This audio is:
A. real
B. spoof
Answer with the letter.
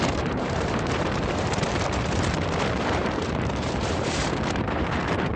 B